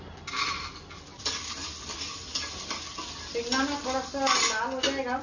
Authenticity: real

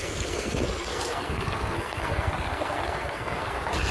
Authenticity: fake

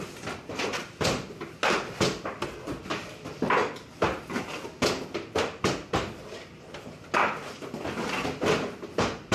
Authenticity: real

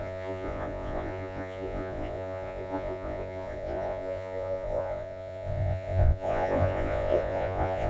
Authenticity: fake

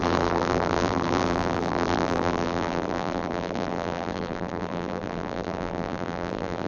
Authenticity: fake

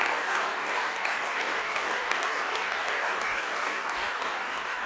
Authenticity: fake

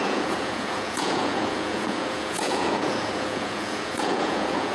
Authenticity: fake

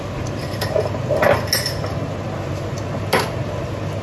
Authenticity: real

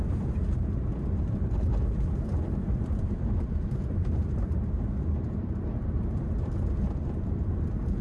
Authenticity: fake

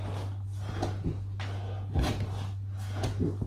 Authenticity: real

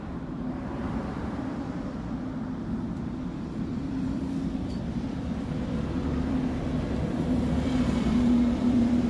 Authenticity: fake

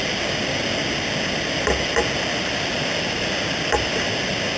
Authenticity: real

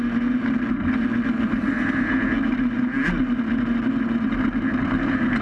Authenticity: real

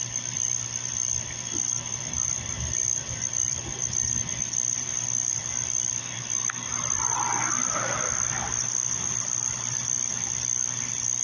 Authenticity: fake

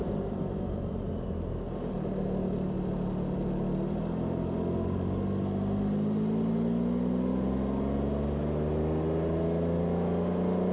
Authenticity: real